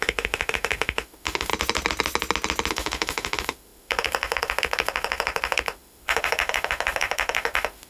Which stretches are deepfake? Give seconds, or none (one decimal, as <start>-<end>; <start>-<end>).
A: 0.0-1.5; 2.7-7.9

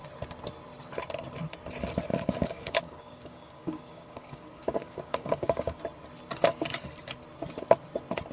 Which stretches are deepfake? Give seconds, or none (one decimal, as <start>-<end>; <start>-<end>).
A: 2.1-5.8

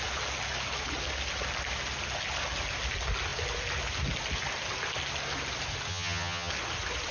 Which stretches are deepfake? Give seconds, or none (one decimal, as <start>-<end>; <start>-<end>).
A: 5.9-6.5

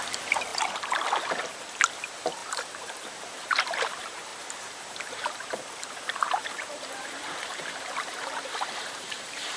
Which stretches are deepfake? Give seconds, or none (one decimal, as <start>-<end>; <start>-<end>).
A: 0.0-0.5; 2.0-9.6

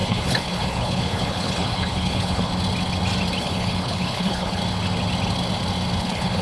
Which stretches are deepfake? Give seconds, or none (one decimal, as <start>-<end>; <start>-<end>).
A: 0.0-2.5; 3.4-4.6; 6.0-6.4

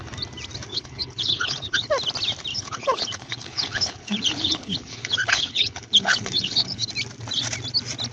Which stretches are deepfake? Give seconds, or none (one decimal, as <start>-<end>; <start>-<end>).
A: 0.7-1.9; 2.5-6.9

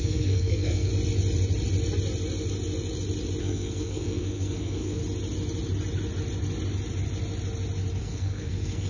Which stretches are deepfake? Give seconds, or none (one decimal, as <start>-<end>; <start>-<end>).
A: 0.0-0.9; 3.4-5.0; 8.0-8.9